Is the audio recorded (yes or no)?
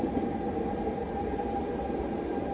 yes